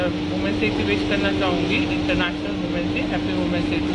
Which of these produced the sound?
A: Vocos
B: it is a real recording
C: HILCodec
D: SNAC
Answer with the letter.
B